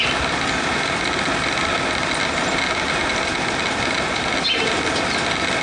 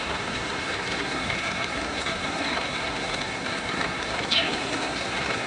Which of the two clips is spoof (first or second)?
second